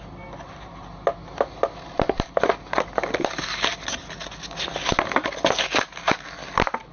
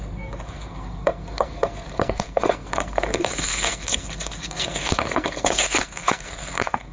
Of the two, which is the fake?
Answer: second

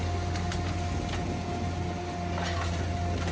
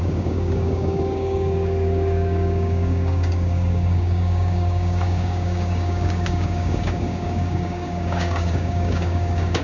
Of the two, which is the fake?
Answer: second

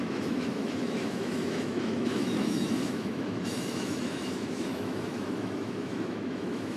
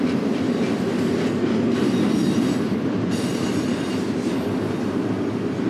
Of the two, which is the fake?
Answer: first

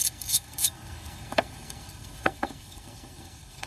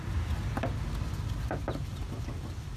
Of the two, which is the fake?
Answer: first